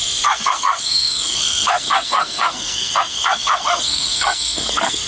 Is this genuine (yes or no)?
no